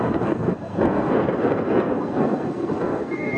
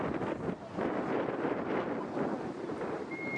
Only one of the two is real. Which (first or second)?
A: second